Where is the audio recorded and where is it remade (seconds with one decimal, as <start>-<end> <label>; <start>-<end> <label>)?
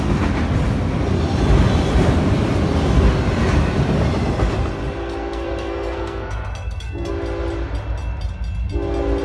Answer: 0.0-5.0 recorded; 5.0-7.1 remade; 7.1-9.2 recorded